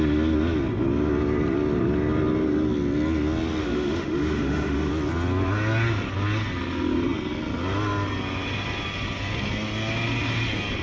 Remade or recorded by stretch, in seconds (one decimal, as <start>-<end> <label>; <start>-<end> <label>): 0.0-3.6 recorded; 3.6-4.9 remade; 4.9-10.8 recorded